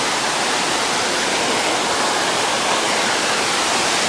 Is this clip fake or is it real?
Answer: real